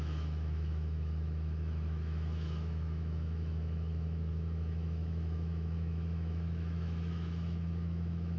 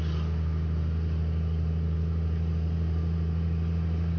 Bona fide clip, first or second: second